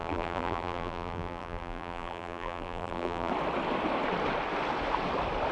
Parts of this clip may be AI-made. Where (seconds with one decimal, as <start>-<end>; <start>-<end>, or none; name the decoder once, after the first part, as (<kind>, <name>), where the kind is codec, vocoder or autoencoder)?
0.0-3.3 (vocoder, BigVGAN v2)